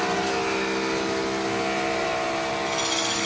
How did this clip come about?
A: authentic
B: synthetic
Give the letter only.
A